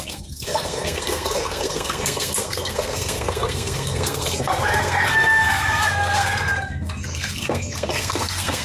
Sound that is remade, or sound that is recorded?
remade